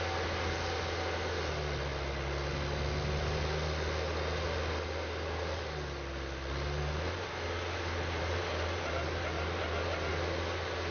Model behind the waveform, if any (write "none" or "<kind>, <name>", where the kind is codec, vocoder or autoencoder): none